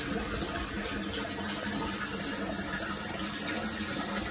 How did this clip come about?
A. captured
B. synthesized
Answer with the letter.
A